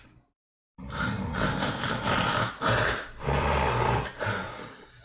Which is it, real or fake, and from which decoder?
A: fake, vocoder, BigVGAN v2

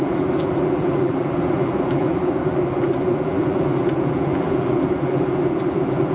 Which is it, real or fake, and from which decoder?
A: fake, vocoder, BigVGAN v2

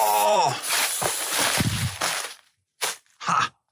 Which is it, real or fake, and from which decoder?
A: fake, vocoder, BigVGAN v2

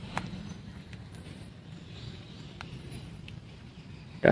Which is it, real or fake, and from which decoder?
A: fake, vocoder, BigVGAN v2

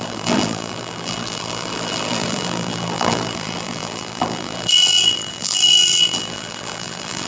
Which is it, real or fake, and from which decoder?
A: fake, vocoder, BigVGAN v2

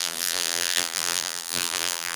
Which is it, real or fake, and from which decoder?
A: fake, vocoder, BigVGAN v2